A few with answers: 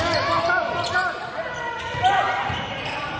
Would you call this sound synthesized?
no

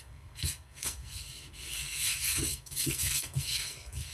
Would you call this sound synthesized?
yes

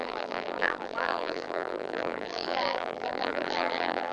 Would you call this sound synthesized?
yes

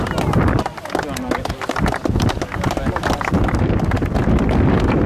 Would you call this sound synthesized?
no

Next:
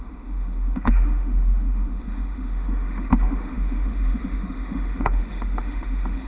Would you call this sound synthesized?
yes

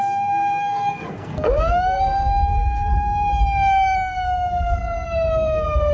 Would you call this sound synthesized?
yes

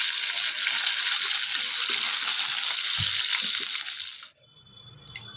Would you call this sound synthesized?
no